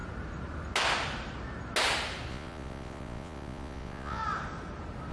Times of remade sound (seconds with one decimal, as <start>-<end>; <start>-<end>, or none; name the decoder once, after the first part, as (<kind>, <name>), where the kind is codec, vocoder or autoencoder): 2.3-4.2 (vocoder, Vocos)